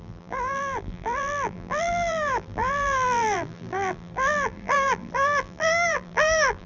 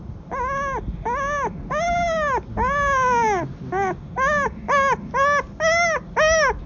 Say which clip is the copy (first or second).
first